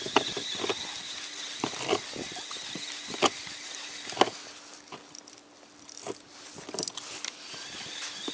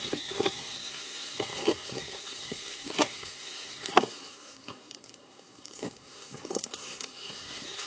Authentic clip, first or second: first